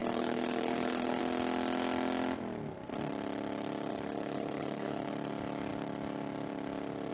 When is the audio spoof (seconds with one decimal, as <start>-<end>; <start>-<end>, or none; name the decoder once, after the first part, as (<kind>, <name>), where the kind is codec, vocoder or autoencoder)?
0.0-1.2 (codec, HILCodec); 3.9-5.1